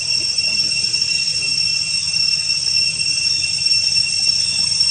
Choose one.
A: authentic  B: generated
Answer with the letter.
A